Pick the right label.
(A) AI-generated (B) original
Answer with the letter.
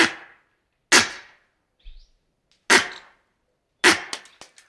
B